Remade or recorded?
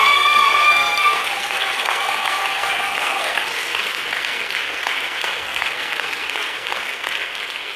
remade